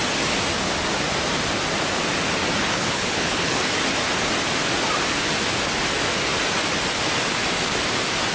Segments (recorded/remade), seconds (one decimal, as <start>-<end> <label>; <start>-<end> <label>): 0.0-2.7 recorded; 2.7-3.8 remade; 3.8-8.3 recorded